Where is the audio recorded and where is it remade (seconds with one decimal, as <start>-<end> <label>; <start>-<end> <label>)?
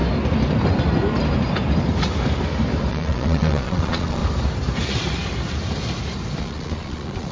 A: 0.0-2.9 recorded; 2.9-4.2 remade; 4.2-6.4 recorded; 6.4-7.3 remade